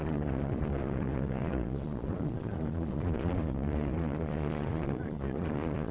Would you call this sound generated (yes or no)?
yes